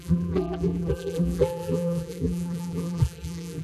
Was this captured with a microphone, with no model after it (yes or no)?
no